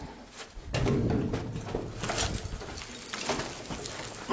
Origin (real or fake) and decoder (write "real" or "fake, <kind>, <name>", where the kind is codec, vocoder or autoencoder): real